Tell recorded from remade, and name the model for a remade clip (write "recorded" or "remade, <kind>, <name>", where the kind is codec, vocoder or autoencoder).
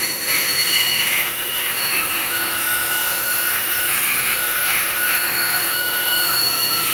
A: remade, autoencoder, DAC-VAE